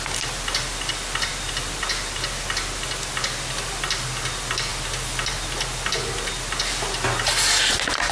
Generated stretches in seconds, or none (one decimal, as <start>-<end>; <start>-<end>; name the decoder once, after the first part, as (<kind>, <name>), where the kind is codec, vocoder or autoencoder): none